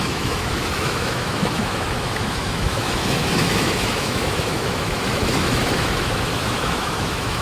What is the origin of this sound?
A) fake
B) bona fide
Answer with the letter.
A